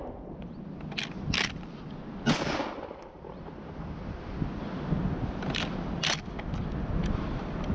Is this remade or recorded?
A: recorded